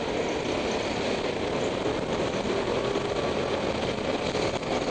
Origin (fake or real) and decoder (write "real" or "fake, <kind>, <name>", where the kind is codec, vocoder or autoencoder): real